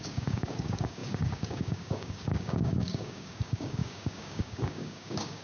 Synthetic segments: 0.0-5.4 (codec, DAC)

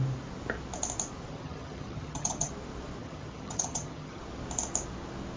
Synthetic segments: 1.3-2.5 (vocoder, HiFi-GAN); 3.0-4.2

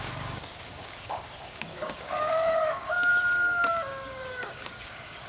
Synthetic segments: 0.0-3.1 (codec, DAC); 3.7-5.3

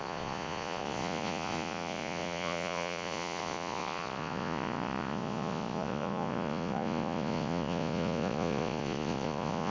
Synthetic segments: 0.0-9.7 (vocoder, Vocos)

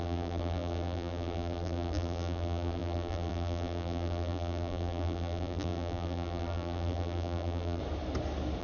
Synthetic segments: 0.0-7.8 (vocoder, BigVGAN v2)

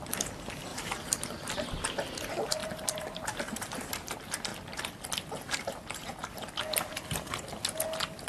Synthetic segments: 0.7-1.5 (vocoder, BigVGAN v2); 2.6-3.9

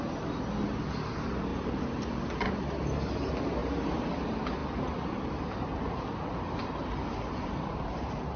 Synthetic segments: 1.5-2.3 (vocoder, BigVGAN v2); 6.8-8.4

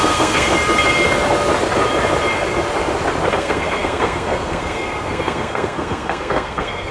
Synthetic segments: 0.0-0.5 (codec, SNAC); 3.3-6.9